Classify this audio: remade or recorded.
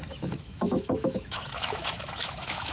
remade